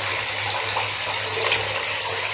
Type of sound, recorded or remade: recorded